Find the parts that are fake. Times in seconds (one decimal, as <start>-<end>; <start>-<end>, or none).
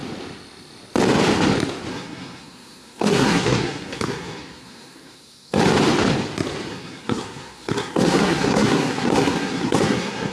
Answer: 1.9-5.6; 6.7-10.3